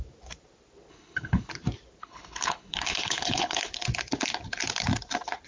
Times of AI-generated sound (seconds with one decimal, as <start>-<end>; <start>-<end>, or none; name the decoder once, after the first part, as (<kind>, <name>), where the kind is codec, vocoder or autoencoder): 0.9-1.5 (codec, HILCodec); 2.0-3.7